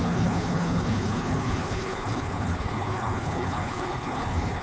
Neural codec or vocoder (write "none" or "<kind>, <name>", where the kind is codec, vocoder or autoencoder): codec, HILCodec